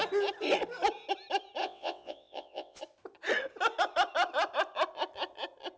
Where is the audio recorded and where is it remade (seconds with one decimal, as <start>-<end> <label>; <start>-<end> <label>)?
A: 0.0-1.6 recorded; 1.6-2.8 remade; 2.8-5.8 recorded